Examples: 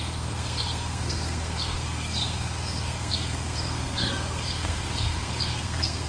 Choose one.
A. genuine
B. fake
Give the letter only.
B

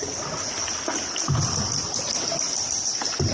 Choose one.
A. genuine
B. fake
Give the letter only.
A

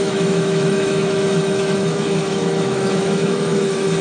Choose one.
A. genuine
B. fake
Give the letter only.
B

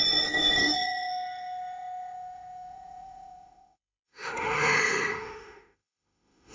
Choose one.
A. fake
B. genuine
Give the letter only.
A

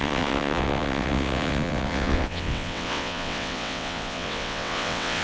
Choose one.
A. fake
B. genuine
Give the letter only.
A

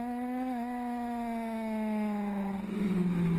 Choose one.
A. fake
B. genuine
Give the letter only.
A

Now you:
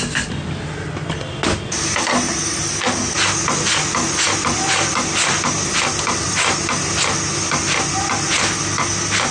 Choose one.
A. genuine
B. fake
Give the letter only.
A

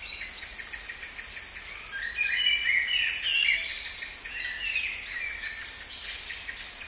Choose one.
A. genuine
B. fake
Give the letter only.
A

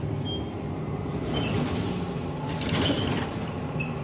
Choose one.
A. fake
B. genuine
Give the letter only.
B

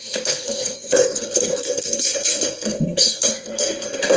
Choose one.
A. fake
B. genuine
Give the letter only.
A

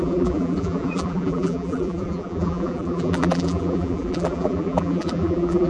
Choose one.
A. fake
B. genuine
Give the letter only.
A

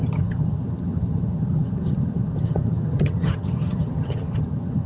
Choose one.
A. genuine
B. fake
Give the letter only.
B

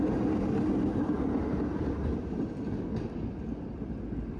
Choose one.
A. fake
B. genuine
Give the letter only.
B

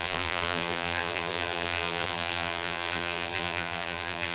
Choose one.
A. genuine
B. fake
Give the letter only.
B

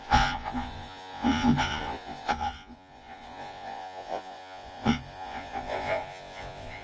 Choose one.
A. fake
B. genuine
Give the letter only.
A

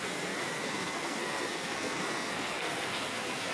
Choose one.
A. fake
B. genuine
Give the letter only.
A